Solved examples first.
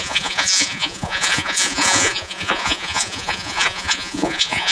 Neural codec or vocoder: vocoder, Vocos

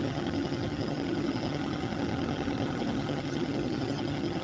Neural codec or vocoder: vocoder, HiFi-GAN